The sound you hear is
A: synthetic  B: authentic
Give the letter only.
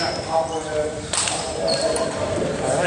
A